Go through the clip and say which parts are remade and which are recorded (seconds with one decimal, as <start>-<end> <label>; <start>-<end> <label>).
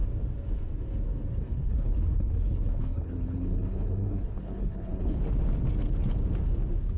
0.0-1.3 recorded; 1.3-5.2 remade; 5.2-7.0 recorded